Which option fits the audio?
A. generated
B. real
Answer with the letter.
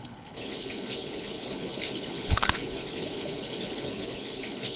A